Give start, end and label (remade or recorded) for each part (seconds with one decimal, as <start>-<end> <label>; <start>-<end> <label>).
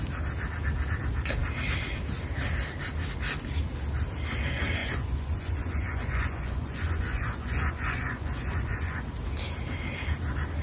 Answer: 0.0-4.8 recorded; 4.8-9.0 remade; 9.0-10.6 recorded